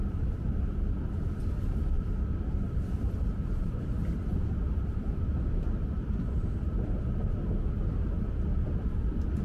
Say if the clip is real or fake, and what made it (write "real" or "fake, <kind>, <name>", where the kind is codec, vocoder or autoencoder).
fake, vocoder, BigVGAN v2